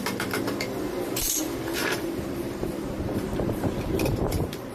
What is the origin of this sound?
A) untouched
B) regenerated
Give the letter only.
B